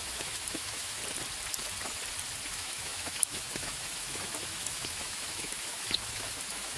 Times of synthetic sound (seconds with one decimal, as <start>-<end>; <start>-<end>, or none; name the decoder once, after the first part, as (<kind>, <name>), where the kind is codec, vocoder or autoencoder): 0.0-1.0 (autoencoder, DAC-VAE); 2.5-6.8

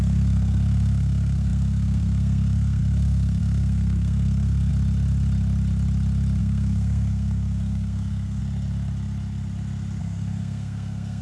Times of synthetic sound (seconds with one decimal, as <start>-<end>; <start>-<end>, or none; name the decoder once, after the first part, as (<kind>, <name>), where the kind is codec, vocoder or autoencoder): 0.0-4.7 (codec, SNAC); 6.4-8.4; 10.0-11.2

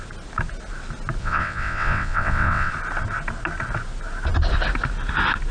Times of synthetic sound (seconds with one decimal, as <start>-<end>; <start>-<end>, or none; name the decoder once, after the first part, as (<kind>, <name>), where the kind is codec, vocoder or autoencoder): 1.2-2.7 (vocoder, WaveNeXt)

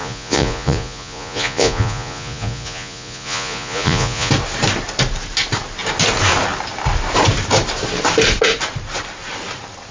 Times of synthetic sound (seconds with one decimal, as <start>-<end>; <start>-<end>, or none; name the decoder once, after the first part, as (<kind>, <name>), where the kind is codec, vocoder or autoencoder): 0.0-4.3 (vocoder, Vocos)

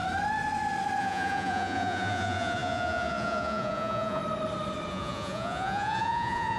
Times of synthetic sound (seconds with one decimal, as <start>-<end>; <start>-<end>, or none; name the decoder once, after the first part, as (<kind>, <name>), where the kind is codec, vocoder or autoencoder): 1.0-4.2 (vocoder, Vocos); 4.9-6.6

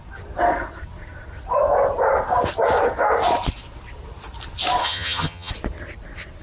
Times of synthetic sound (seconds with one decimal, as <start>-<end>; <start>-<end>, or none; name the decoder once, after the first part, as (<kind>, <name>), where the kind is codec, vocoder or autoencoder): 4.8-5.5 (vocoder, HiFi-GAN)

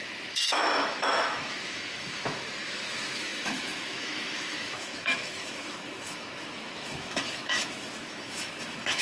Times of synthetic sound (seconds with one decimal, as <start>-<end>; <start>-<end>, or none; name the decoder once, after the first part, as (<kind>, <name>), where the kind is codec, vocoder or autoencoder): 0.0-9.0 (autoencoder, DAC-VAE)